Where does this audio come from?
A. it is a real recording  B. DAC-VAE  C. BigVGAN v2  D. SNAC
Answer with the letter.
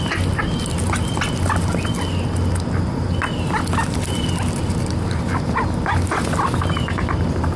A